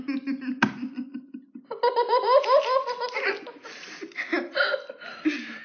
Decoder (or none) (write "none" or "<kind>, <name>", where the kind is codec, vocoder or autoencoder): none